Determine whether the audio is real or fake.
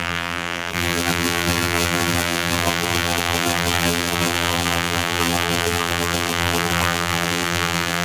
fake